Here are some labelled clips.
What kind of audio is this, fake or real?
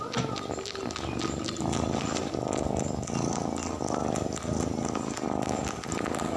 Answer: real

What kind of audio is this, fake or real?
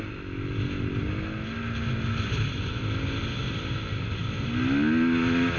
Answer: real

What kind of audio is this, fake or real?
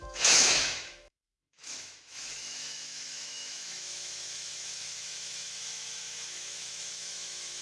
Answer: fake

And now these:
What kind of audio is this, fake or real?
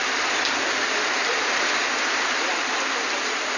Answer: real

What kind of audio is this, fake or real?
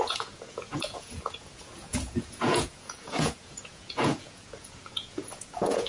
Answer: fake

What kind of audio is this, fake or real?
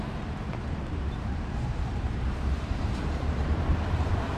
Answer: fake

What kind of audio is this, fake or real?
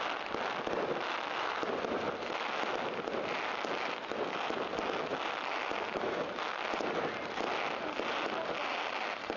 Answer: real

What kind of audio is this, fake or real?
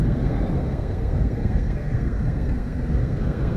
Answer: fake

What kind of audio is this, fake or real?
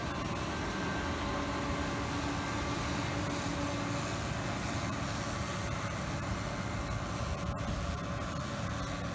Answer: real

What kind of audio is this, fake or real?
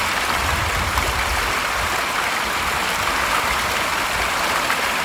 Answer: real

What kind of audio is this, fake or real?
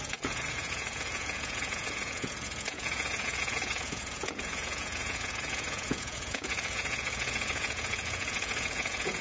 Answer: fake